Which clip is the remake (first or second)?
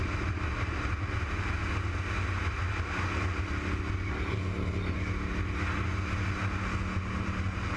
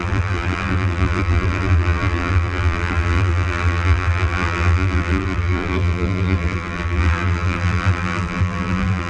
second